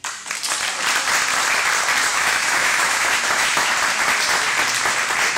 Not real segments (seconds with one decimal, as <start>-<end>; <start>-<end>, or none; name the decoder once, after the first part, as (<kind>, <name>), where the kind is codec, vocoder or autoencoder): 2.1-3.7 (autoencoder, DAC-VAE)